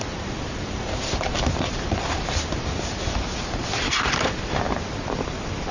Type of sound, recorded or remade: remade